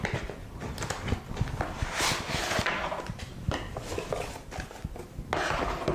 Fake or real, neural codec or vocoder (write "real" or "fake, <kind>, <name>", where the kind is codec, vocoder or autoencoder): real